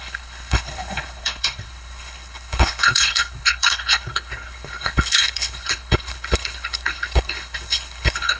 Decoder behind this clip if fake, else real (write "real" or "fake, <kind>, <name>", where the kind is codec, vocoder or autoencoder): fake, codec, HILCodec